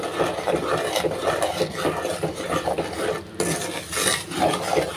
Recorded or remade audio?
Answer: recorded